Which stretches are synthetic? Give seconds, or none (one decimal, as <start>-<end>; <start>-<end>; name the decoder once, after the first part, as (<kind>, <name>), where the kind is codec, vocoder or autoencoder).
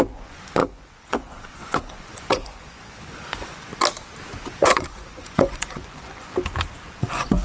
0.0-3.7 (vocoder, Vocos); 4.5-6.3; 7.0-7.4